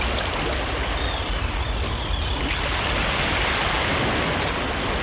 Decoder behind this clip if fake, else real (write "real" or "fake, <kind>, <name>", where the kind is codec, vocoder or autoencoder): real